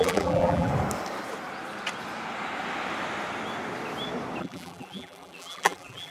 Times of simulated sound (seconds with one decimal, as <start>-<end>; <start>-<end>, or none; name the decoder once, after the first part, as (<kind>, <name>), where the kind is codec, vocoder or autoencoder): 0.0-0.7 (vocoder, BigVGAN v2); 4.4-6.1